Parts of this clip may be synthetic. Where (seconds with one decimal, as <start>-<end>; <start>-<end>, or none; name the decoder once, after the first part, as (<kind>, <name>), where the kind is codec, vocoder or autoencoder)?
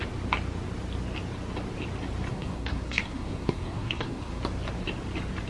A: 2.3-4.4 (codec, SNAC)